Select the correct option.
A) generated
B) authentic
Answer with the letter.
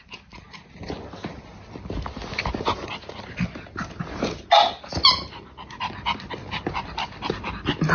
B